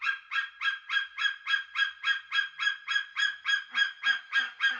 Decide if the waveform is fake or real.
real